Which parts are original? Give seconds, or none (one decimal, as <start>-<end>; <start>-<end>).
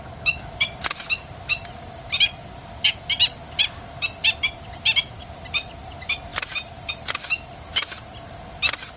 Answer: 0.0-9.0